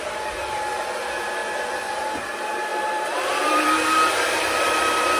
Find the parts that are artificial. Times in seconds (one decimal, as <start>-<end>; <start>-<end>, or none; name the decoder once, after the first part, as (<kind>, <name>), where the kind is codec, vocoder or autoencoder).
0.0-5.2 (vocoder, BigVGAN v2)